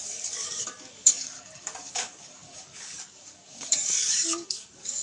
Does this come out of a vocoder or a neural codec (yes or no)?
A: yes